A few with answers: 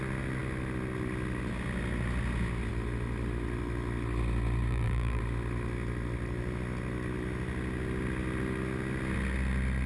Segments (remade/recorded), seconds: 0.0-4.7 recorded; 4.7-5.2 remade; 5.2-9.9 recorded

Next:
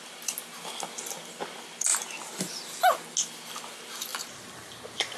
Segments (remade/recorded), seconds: 0.0-5.2 recorded

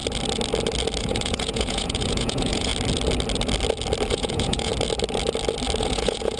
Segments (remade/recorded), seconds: 0.0-1.0 recorded; 1.0-2.7 remade; 2.7-4.1 recorded; 4.1-4.7 remade; 4.7-5.8 recorded; 5.8-6.4 remade